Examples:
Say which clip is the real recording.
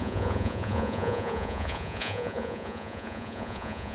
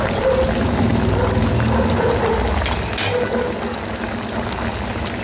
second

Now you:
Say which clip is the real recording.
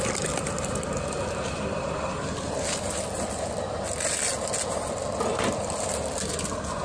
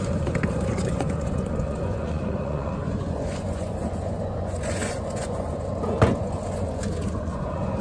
first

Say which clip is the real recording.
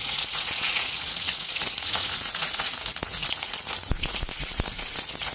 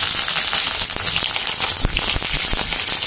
second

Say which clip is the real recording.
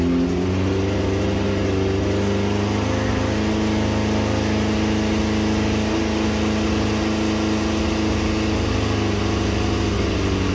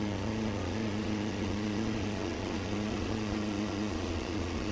first